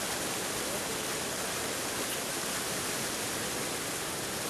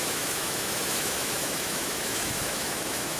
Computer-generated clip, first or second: second